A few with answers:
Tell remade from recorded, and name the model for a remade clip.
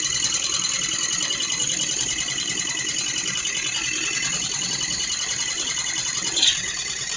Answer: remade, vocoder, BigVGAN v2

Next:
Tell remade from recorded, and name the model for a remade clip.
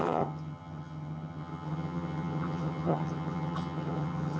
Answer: remade, vocoder, HiFi-GAN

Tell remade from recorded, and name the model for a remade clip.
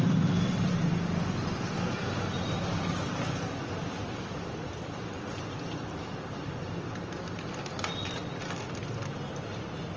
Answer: recorded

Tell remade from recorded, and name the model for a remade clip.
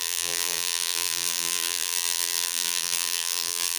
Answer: remade, vocoder, BigVGAN v2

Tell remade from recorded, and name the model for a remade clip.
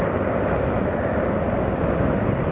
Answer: recorded